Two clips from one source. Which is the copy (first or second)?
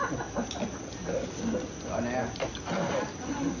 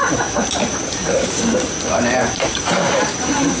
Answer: second